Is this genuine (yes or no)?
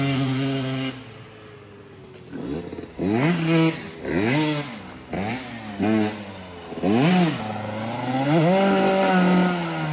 yes